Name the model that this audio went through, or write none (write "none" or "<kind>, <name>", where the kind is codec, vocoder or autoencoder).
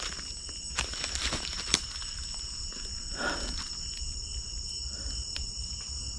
none